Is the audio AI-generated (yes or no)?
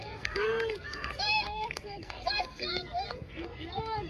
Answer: yes